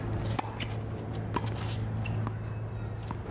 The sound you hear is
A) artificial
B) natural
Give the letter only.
B